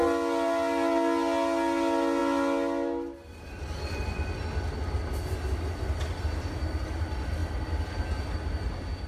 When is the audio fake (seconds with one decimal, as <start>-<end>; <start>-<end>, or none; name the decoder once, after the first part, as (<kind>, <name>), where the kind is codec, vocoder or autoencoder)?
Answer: none